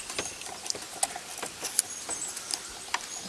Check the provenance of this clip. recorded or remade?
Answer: recorded